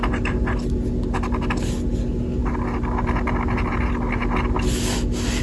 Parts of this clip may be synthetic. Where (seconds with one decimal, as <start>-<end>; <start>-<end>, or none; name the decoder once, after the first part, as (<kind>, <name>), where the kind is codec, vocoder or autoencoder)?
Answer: none